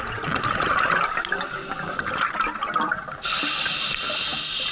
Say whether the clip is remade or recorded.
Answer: recorded